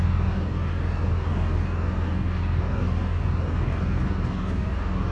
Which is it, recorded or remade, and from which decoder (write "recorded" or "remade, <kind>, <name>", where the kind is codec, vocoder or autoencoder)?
remade, codec, DAC